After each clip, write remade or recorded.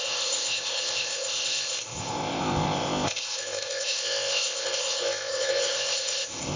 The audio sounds remade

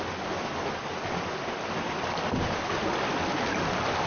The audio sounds recorded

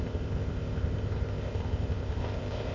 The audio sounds remade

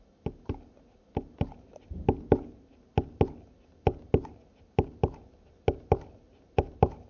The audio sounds recorded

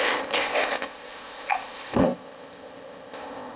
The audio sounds remade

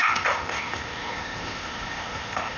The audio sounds remade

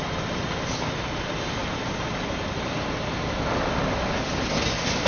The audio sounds recorded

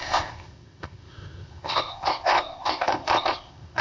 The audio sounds remade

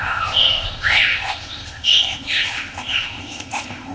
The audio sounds remade